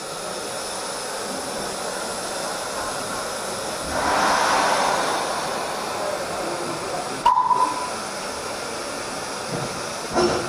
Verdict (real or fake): real